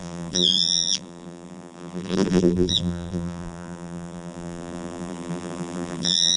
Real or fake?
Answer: fake